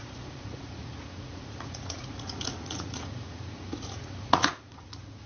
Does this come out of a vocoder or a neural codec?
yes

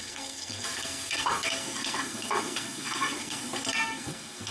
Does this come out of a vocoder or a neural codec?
yes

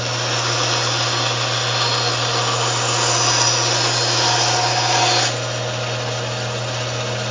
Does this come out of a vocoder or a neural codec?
no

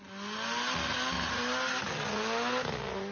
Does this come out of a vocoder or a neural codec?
no